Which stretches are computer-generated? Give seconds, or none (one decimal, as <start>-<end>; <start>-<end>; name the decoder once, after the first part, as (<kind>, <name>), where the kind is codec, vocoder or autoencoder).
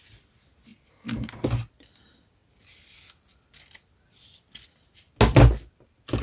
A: none